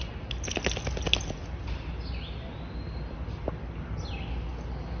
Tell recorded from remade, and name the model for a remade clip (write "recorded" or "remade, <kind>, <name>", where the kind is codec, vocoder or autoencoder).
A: recorded